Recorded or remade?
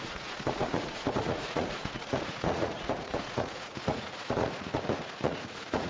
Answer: remade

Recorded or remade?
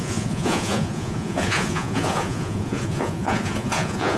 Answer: remade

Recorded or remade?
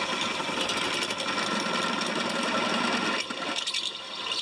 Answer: recorded